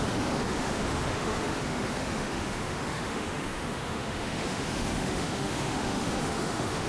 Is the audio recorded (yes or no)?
no